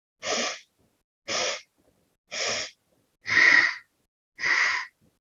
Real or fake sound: real